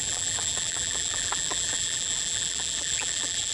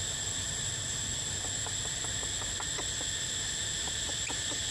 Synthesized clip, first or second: first